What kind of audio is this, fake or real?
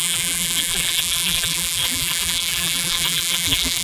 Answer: fake